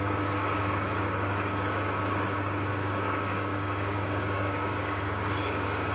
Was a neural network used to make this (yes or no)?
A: yes